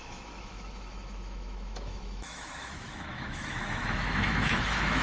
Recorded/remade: remade